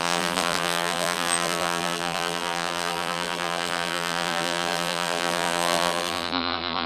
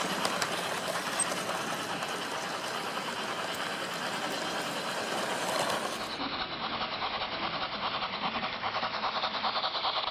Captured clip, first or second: second